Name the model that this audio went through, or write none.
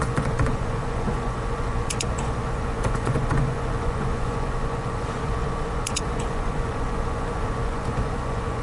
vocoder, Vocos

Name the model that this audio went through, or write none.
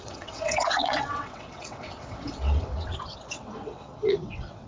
vocoder, WaveNeXt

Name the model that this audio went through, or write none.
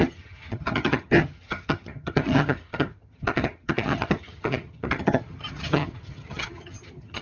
vocoder, HiFi-GAN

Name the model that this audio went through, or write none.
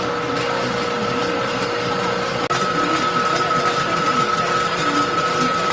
none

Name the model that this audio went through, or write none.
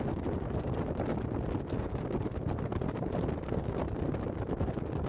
none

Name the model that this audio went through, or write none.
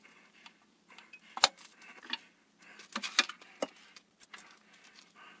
none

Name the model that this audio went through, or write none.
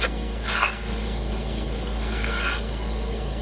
codec, SNAC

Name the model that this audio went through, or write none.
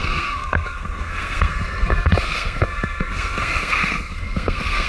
codec, SNAC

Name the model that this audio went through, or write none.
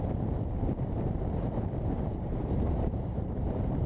vocoder, BigVGAN v2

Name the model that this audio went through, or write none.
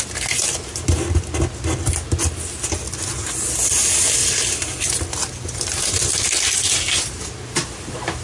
none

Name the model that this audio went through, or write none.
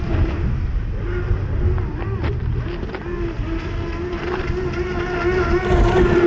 none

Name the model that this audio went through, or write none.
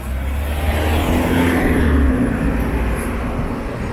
none